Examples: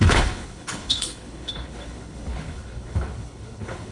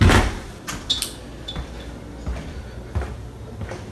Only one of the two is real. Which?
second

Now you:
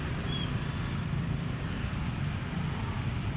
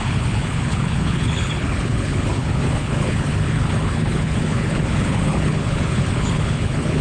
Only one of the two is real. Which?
first